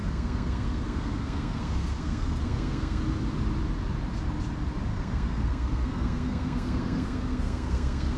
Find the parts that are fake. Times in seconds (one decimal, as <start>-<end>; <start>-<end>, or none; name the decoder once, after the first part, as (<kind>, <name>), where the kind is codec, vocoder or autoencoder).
0.0-3.0 (codec, SNAC); 4.9-8.2